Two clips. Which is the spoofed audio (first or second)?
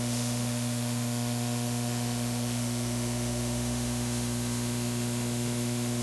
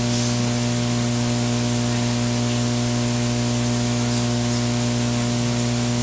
first